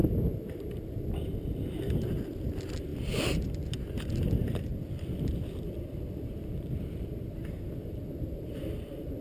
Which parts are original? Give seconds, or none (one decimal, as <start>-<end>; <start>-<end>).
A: 0.0-2.9; 3.5-4.7